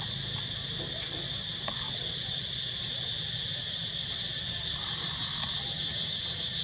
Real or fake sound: real